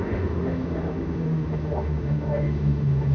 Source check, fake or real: fake